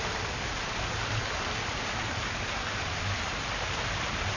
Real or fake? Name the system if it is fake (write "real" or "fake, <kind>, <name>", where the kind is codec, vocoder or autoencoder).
real